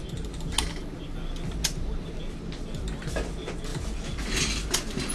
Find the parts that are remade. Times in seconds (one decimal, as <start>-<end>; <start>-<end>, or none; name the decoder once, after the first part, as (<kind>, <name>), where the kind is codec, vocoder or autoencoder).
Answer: none